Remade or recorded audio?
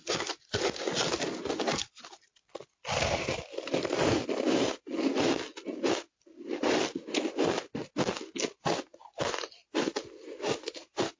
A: recorded